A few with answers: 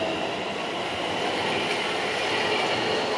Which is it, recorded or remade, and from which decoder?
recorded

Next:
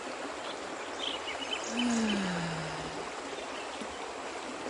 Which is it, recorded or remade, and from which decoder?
recorded